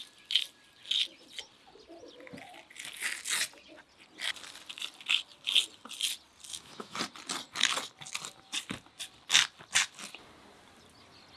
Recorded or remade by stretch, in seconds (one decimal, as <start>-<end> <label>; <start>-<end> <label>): 0.0-6.5 recorded; 6.5-7.0 remade; 7.0-11.4 recorded